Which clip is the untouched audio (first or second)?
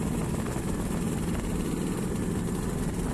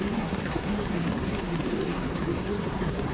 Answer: first